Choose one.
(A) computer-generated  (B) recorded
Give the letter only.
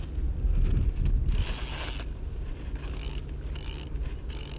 B